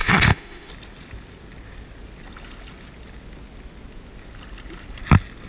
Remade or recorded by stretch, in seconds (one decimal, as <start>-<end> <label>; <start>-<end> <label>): 0.0-0.7 remade; 0.7-5.5 recorded